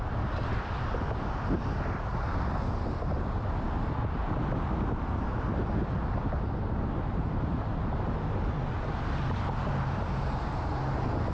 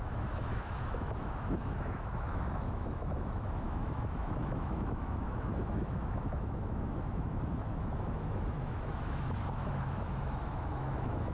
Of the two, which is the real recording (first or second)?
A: first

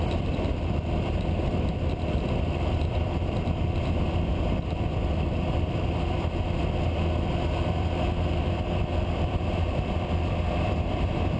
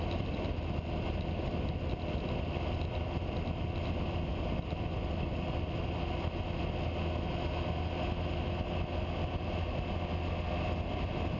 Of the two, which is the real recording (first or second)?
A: second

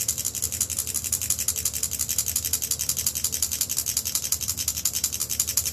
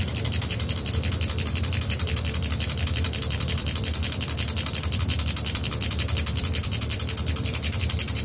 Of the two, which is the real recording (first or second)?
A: first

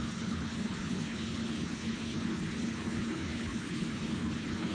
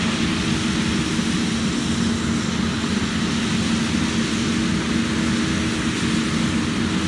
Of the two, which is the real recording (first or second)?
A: second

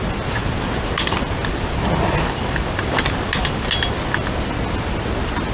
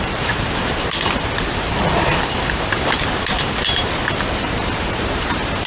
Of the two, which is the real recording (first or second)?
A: first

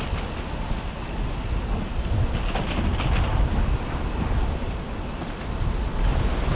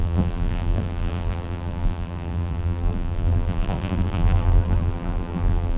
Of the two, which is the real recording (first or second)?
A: first